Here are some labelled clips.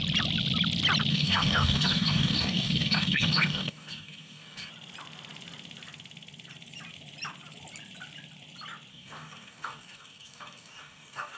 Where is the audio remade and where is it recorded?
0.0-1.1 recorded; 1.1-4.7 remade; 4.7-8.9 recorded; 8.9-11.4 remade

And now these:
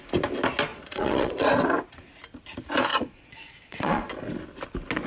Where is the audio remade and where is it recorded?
0.0-0.7 recorded; 0.7-1.5 remade; 1.5-2.9 recorded; 2.9-4.1 remade; 4.1-5.1 recorded

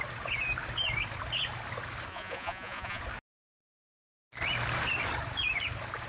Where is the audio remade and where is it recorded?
0.0-2.1 recorded; 2.1-3.0 remade; 3.0-6.1 recorded

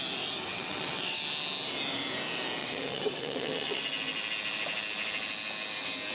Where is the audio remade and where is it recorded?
0.0-0.5 recorded; 0.5-1.2 remade; 1.2-2.6 recorded; 2.6-3.8 remade; 3.8-6.1 recorded

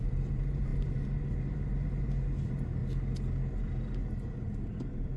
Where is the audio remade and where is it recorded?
0.0-2.8 remade; 2.8-5.2 recorded

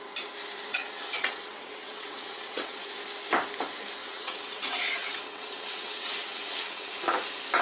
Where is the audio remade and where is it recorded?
0.0-0.7 recorded; 0.7-2.9 remade; 2.9-4.0 recorded; 4.0-6.9 remade; 6.9-7.6 recorded

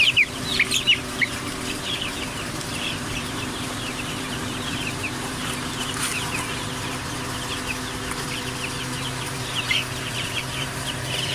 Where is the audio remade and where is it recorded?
0.0-6.1 remade; 6.1-8.8 recorded; 8.8-11.3 remade

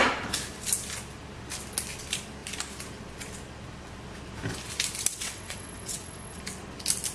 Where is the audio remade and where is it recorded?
0.0-5.1 recorded; 5.1-6.4 remade; 6.4-7.1 recorded